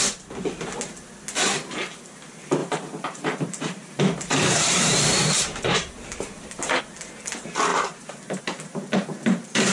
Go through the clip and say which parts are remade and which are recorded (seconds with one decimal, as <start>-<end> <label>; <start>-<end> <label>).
0.0-2.6 recorded; 2.6-6.8 remade; 6.8-7.7 recorded; 7.7-8.4 remade; 8.4-9.7 recorded